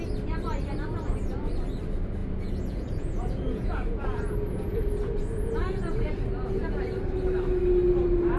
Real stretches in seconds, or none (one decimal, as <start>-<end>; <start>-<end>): 0.0-2.2; 6.1-8.4